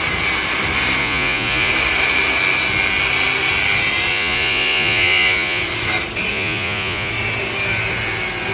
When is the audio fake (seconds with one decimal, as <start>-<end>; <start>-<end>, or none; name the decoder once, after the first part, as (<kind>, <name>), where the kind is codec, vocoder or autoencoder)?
1.0-1.7 (vocoder, Vocos); 4.1-5.6; 6.3-7.1